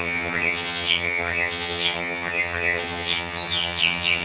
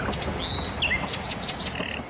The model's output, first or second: first